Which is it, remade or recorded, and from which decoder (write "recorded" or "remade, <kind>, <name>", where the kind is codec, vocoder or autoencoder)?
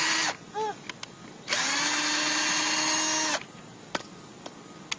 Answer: recorded